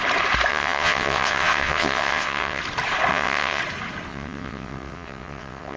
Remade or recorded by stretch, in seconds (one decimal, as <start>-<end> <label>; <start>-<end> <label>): 0.0-0.5 recorded; 0.5-2.6 remade; 2.6-3.1 recorded; 3.1-3.6 remade; 3.6-4.1 recorded; 4.1-5.8 remade